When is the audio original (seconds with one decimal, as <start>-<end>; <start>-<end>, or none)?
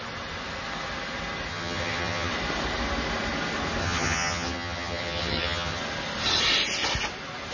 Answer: 0.0-1.5; 2.3-3.8; 5.8-7.5